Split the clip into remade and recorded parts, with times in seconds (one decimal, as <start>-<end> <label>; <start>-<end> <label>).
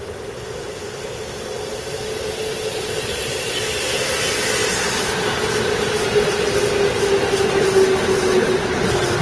0.0-9.2 recorded